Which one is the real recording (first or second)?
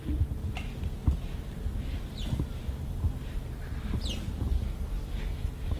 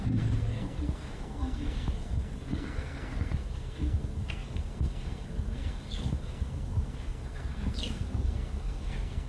first